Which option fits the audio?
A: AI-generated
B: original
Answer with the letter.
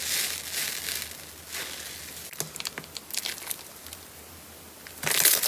B